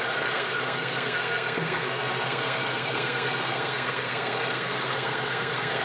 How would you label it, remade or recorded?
remade